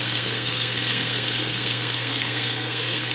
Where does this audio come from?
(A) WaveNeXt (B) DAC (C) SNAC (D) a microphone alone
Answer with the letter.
C